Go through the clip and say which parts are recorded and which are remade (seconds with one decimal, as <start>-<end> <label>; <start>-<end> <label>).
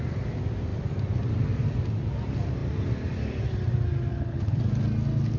0.0-4.1 recorded; 4.1-4.6 remade; 4.6-5.4 recorded